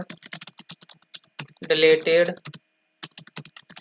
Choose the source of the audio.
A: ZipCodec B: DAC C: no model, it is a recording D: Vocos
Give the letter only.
C